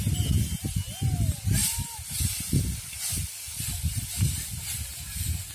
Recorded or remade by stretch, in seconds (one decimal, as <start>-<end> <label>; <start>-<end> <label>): 0.0-5.5 recorded